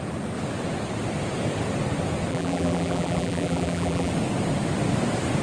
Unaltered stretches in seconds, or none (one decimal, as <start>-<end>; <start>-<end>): 0.0-2.3; 4.1-5.4